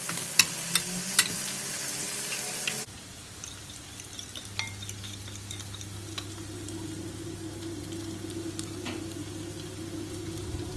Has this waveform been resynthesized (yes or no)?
no